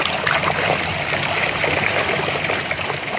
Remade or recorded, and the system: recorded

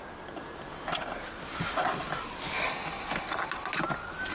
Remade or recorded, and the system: recorded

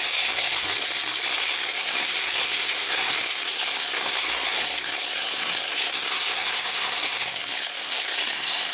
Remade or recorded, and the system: remade, codec, SNAC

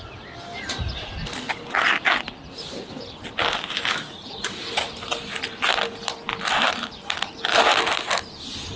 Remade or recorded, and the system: recorded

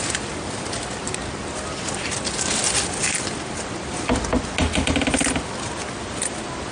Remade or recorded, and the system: recorded